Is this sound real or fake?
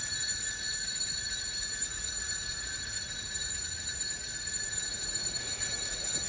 fake